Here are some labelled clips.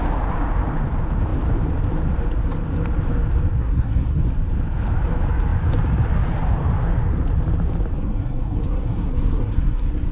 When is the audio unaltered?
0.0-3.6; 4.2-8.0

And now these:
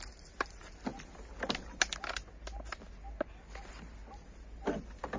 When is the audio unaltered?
0.0-5.2